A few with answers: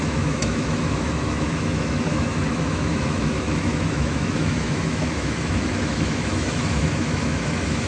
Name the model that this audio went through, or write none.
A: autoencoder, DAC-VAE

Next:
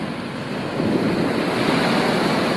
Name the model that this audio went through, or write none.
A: none